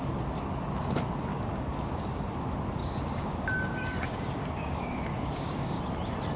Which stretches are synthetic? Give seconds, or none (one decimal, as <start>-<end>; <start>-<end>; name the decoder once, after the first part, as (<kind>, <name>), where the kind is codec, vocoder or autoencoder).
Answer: 1.3-1.9 (codec, DAC); 2.8-5.8